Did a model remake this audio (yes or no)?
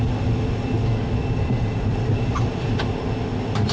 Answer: no